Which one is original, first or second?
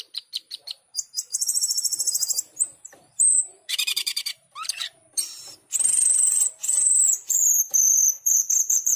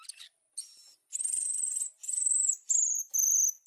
second